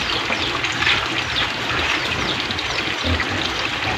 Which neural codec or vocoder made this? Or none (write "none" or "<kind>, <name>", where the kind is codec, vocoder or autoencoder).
none